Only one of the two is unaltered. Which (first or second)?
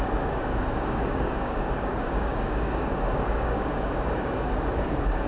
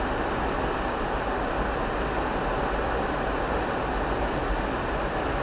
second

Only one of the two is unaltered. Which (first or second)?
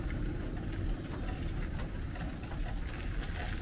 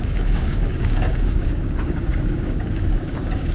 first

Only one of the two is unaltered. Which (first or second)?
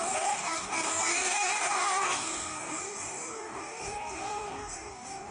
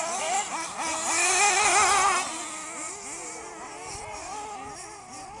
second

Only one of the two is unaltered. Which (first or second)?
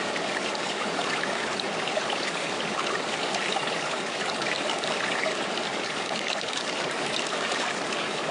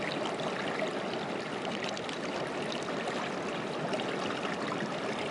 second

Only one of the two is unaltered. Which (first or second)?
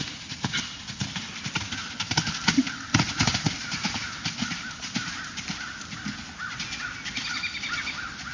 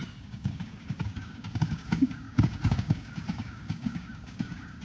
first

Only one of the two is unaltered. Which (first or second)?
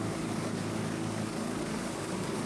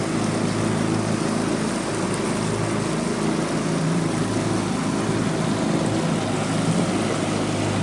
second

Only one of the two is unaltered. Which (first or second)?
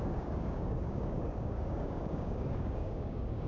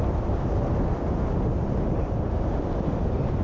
second